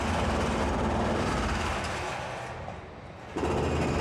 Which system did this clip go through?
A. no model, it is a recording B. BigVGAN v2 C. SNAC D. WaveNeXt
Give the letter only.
A